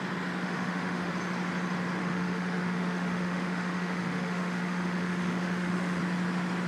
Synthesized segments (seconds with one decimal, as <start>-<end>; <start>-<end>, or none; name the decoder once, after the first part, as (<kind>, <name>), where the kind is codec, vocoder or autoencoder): 0.4-1.1 (autoencoder, DAC-VAE); 2.0-6.0